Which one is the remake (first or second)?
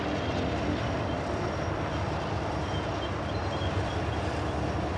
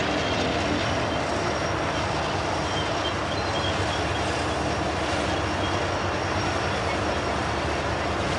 first